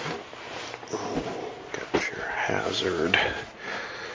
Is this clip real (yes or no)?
yes